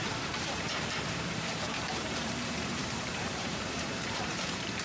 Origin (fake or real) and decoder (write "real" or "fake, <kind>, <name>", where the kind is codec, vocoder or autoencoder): fake, vocoder, BigVGAN v2